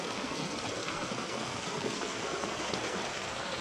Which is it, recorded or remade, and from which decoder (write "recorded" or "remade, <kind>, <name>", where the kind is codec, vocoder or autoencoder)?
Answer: remade, codec, SNAC